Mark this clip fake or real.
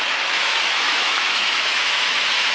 fake